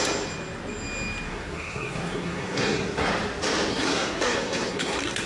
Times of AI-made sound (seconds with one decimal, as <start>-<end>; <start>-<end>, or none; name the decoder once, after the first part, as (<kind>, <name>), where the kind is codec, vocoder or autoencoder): 1.3-3.1 (codec, SNAC); 3.7-5.3